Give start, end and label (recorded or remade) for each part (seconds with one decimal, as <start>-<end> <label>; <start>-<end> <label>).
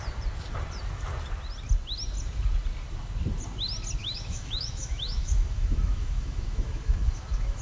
0.0-4.0 recorded; 4.0-7.6 remade